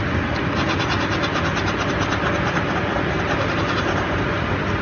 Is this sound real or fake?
real